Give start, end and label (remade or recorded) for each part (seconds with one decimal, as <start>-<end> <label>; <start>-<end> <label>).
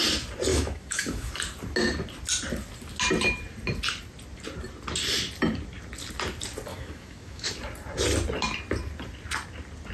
0.0-0.5 recorded; 0.5-1.3 remade; 1.3-6.7 recorded; 6.7-7.5 remade; 7.5-9.9 recorded